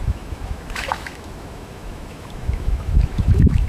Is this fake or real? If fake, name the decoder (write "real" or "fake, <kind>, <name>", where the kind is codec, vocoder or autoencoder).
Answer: fake, autoencoder, DAC-VAE